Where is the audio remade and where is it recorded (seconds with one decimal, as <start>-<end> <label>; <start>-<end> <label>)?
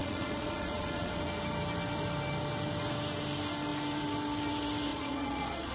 0.0-1.2 remade; 1.2-4.9 recorded; 4.9-5.7 remade